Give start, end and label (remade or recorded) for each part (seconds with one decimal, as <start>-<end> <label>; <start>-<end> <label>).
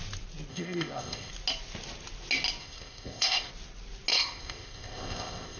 0.0-0.5 recorded; 0.5-1.3 remade; 1.3-2.6 recorded; 2.6-3.5 remade; 3.5-4.1 recorded; 4.1-5.6 remade